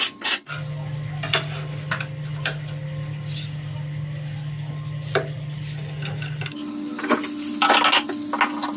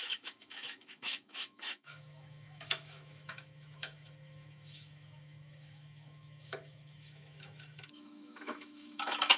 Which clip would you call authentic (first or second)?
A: first